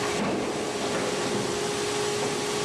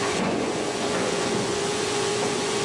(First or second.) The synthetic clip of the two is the second